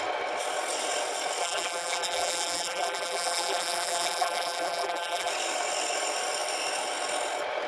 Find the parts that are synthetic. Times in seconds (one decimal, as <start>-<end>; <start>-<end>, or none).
1.4-5.3